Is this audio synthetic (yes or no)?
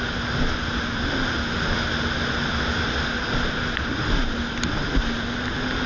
no